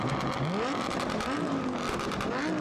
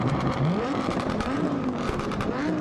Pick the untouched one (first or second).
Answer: first